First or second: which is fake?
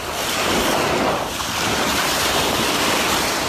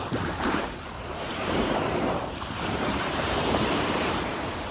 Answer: second